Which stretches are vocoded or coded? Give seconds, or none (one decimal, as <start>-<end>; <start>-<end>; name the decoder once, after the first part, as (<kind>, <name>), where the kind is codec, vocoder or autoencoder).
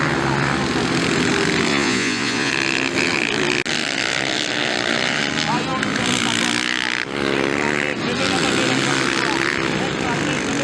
1.7-2.5 (vocoder, Vocos)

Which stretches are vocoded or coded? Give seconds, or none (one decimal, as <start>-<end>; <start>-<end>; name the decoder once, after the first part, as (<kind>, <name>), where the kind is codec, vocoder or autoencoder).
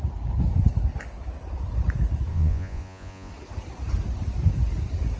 2.3-3.3 (vocoder, Vocos)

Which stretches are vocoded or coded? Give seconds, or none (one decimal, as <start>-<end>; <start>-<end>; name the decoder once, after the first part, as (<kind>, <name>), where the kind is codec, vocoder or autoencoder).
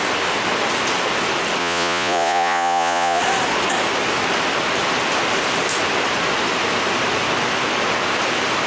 1.6-3.2 (vocoder, Vocos)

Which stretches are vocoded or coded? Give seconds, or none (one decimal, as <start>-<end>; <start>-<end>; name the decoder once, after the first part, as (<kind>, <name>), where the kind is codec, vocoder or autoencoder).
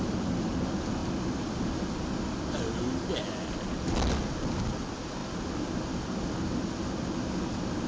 none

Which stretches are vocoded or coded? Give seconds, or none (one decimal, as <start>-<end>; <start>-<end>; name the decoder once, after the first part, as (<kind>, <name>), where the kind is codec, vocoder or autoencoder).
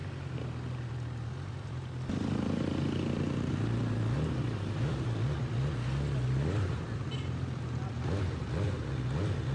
none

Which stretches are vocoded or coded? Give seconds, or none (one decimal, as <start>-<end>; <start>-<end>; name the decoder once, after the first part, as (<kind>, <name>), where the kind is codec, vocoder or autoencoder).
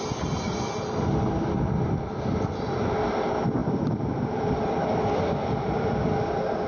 none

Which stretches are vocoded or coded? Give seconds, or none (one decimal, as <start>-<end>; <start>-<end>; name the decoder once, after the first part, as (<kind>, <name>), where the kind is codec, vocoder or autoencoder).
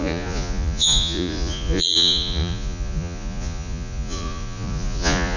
0.0-5.4 (vocoder, Vocos)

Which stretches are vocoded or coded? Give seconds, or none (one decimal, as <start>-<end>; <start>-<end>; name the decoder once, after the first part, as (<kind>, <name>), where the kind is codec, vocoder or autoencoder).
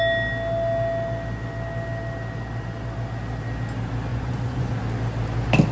4.1-4.7 (vocoder, Vocos)